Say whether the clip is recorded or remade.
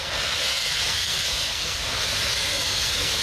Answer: remade